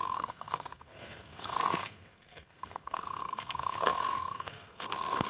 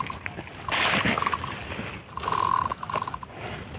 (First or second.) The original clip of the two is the second